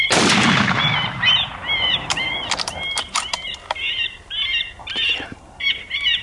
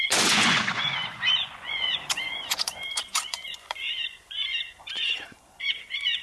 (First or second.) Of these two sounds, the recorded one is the first